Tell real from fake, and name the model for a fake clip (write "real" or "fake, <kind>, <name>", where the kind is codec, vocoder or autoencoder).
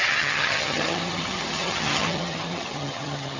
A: fake, vocoder, HiFi-GAN